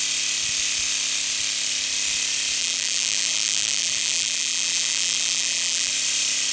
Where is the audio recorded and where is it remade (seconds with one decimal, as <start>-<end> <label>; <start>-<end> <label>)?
0.0-2.6 recorded; 2.6-5.9 remade; 5.9-6.5 recorded